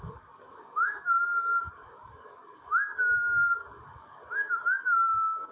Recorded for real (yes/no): no